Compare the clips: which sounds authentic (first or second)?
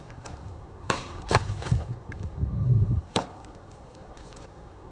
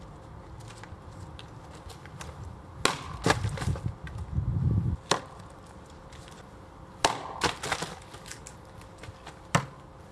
second